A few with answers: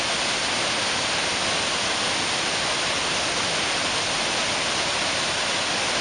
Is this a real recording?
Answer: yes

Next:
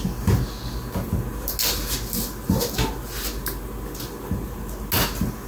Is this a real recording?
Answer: yes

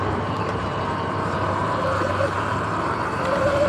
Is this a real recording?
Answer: no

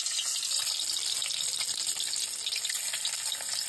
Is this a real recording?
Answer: yes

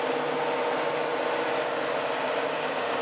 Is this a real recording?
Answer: yes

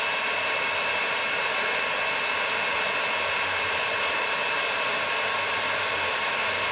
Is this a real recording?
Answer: yes